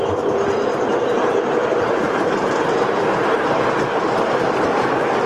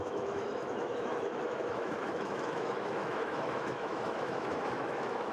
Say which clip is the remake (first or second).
second